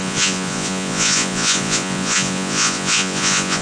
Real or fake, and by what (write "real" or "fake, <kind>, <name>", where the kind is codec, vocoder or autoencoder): fake, vocoder, Vocos